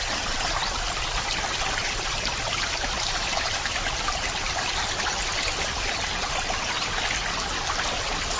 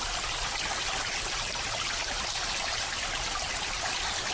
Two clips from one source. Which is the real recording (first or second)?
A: second